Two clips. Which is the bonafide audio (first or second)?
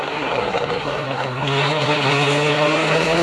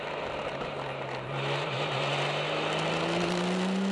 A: second